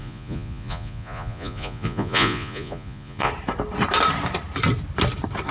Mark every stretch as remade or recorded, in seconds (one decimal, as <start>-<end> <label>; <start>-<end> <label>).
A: 0.0-3.3 remade; 3.3-5.5 recorded